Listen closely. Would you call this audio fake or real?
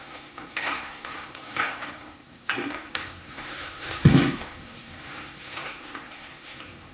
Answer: fake